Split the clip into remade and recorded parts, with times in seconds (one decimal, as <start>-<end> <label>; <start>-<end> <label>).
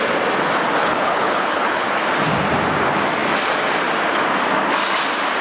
0.0-0.8 recorded; 0.8-1.9 remade; 1.9-5.4 recorded